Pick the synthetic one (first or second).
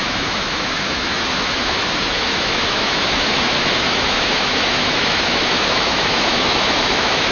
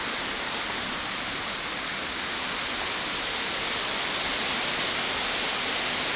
first